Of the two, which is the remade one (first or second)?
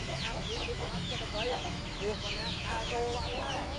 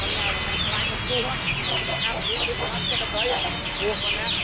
first